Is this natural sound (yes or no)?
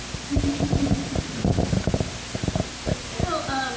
yes